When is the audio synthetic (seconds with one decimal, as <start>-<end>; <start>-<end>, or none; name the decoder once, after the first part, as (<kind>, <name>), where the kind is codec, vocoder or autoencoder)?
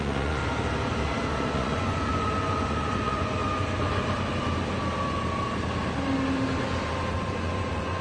0.0-0.4 (vocoder, Vocos); 1.3-3.4; 7.1-8.0